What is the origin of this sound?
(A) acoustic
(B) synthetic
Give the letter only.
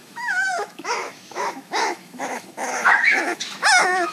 B